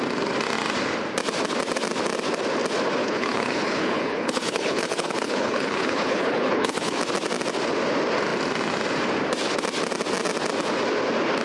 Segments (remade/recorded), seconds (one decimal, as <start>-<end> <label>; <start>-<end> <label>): 0.0-3.0 recorded; 3.0-7.0 remade; 7.0-11.4 recorded